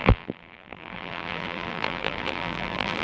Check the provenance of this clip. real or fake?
fake